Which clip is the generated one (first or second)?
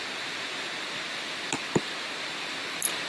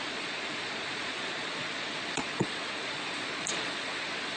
second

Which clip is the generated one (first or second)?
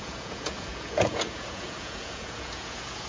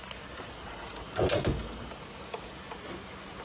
first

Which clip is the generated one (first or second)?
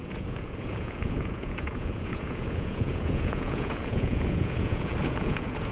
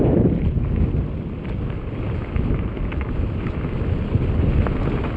first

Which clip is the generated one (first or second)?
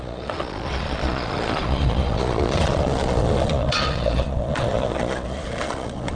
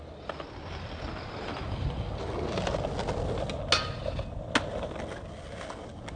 first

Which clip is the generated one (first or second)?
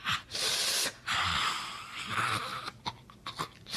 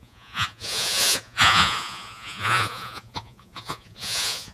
second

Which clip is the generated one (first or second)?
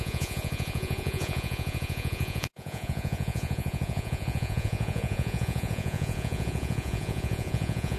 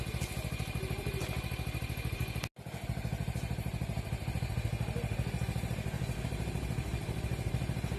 first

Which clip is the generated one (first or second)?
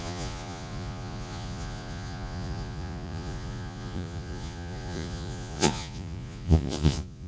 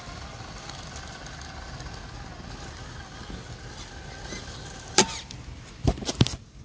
first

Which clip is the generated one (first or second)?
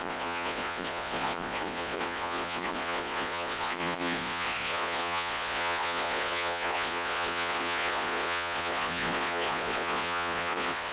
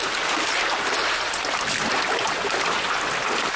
first